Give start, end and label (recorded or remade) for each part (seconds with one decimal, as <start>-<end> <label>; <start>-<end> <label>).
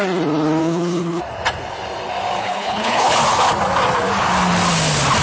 0.0-0.6 recorded; 0.6-1.2 remade; 1.2-2.4 recorded; 2.4-3.2 remade; 3.2-5.2 recorded